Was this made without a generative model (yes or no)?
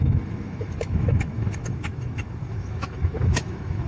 no